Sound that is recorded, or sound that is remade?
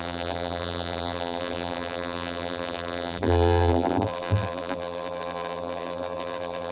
remade